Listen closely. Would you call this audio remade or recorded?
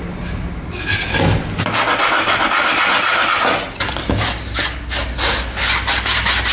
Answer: recorded